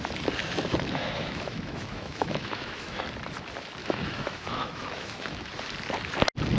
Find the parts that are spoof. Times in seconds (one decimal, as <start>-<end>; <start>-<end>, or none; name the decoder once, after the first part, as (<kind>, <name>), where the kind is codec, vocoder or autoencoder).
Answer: 0.4-3.0 (autoencoder, DAC-VAE); 3.8-5.5